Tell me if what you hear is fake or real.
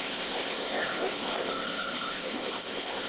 fake